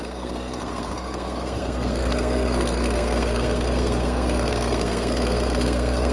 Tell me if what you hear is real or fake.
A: fake